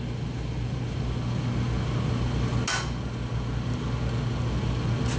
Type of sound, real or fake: real